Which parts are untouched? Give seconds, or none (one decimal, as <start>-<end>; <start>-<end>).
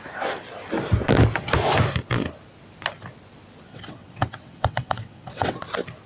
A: 0.0-3.7; 5.6-6.1